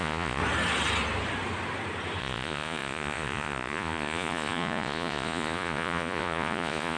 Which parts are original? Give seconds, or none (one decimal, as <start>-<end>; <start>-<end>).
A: 0.4-2.2